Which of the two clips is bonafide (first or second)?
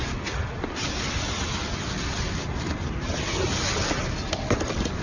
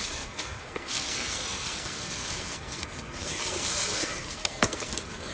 first